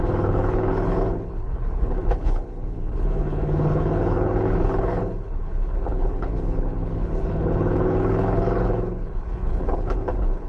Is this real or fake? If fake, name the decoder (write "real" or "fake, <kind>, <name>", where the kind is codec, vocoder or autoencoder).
fake, codec, HILCodec